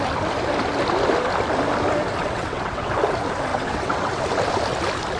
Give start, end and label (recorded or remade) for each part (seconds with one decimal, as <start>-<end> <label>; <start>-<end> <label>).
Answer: 0.0-2.2 recorded; 2.2-2.9 remade; 2.9-3.5 recorded; 3.5-4.2 remade; 4.2-5.2 recorded